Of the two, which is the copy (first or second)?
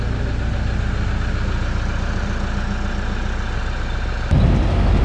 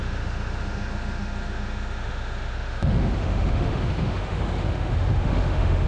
second